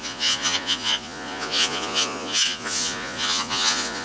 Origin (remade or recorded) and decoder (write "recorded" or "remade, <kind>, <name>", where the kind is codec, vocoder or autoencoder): remade, vocoder, Vocos